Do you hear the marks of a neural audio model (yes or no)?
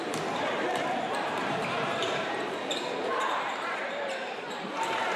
yes